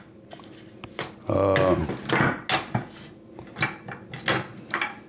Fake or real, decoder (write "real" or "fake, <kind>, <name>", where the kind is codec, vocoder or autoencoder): real